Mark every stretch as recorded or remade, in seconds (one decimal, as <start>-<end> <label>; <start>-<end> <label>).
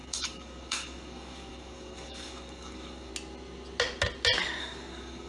0.0-3.1 remade; 3.1-4.6 recorded; 4.6-5.3 remade